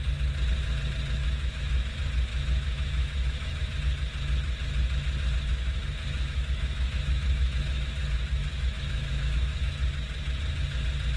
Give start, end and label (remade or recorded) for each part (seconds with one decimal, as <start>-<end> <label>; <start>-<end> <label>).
0.0-1.2 recorded; 1.2-1.9 remade; 1.9-2.3 recorded; 2.3-3.8 remade; 3.8-5.5 recorded; 5.5-9.8 remade; 9.8-11.2 recorded